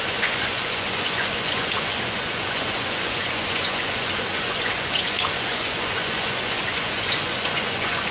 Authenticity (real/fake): fake